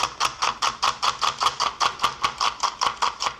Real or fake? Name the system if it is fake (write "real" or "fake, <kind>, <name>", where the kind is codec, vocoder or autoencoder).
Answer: real